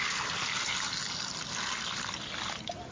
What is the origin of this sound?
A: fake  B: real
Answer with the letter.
B